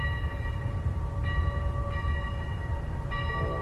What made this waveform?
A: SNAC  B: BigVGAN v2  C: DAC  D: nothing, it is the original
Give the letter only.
D